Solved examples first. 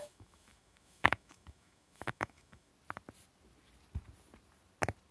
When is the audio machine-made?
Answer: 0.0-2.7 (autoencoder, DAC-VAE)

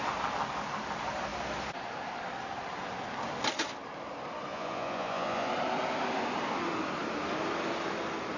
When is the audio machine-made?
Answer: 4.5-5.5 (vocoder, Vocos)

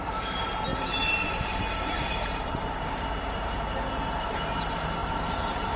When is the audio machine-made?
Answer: 0.0-5.8 (vocoder, BigVGAN v2)

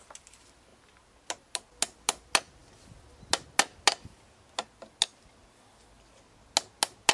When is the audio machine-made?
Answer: none